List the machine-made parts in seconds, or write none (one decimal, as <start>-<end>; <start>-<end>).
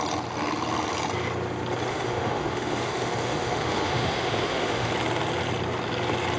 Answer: 1.9-4.9